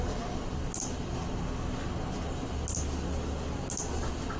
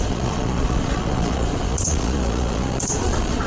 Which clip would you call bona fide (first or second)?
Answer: first